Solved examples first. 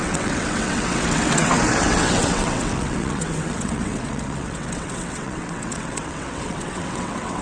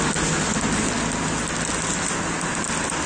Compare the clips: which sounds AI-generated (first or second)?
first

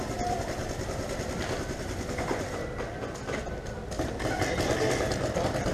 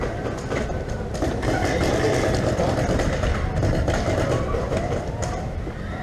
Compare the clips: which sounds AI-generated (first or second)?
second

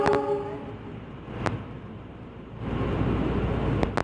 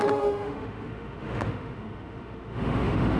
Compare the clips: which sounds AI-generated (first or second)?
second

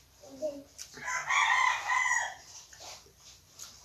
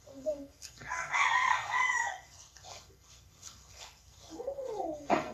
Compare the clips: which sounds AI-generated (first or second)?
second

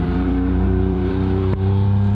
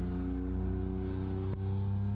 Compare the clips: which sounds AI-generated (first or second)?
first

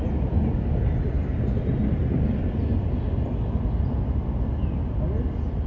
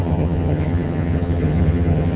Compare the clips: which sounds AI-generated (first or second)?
second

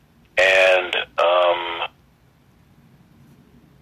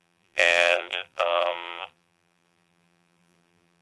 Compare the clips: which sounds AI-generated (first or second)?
second